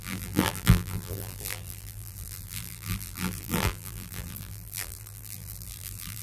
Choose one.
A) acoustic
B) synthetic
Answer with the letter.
B